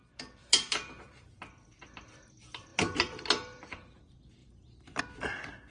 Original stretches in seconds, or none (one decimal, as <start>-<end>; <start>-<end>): 0.0-0.4; 1.4-2.7; 3.9-4.4; 5.0-5.7

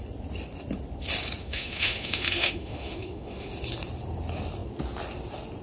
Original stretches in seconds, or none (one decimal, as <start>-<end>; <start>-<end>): 0.0-1.4; 3.5-5.6

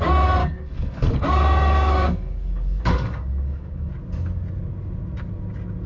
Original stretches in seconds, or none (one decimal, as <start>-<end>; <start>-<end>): 0.0-0.4; 3.9-5.9

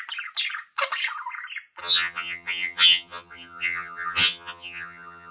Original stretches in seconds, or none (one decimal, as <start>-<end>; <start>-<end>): 0.0-1.8

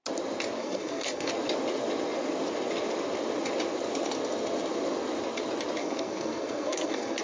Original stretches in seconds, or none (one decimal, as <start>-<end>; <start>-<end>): 0.0-0.6; 1.3-5.8

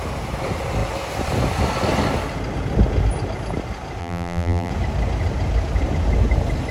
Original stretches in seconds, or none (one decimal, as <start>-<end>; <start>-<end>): 0.0-4.0; 4.7-6.7

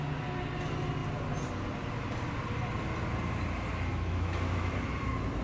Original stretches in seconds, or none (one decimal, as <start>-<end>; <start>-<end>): 0.0-3.9; 4.7-5.4

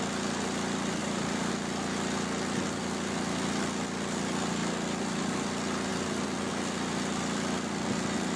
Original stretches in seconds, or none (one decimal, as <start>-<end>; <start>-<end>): 0.0-1.0; 1.5-8.4